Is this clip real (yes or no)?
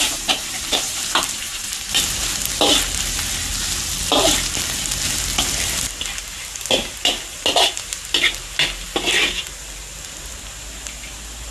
yes